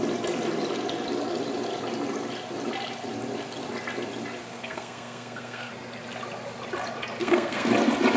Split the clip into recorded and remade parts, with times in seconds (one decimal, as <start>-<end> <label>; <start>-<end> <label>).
0.0-4.4 recorded; 4.4-5.7 remade; 5.7-7.2 recorded; 7.2-7.7 remade; 7.7-8.2 recorded